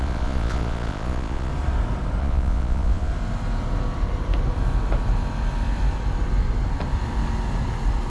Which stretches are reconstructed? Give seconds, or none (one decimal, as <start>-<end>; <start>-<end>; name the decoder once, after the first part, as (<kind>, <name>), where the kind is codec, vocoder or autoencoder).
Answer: 0.0-1.5 (vocoder, Vocos); 2.2-3.1